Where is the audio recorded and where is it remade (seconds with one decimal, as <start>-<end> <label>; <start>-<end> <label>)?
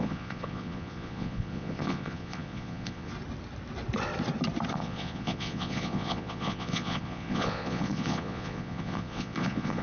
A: 0.0-3.1 remade; 3.1-4.7 recorded; 4.7-9.8 remade